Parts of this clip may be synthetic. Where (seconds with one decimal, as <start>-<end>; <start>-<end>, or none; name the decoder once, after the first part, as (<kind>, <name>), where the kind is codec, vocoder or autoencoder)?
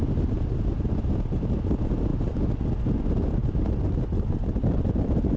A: 3.4-5.4 (vocoder, BigVGAN v2)